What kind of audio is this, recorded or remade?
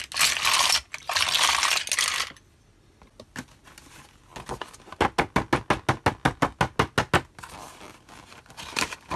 recorded